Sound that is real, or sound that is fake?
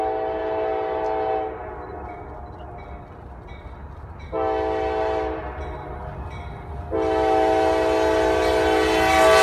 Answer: real